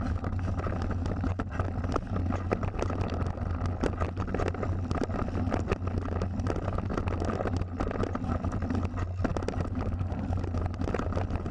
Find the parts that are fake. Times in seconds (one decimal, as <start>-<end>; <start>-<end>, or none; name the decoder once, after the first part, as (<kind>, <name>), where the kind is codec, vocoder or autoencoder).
none